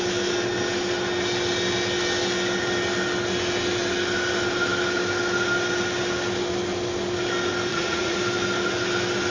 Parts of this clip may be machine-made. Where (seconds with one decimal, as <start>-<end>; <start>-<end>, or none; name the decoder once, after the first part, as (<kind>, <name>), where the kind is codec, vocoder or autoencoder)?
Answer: 7.7-8.2 (vocoder, Vocos)